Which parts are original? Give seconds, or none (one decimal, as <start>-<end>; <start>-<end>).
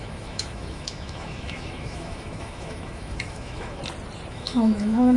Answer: 3.8-4.3